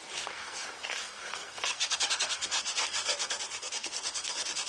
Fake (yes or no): yes